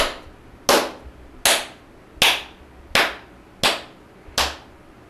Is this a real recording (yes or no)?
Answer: yes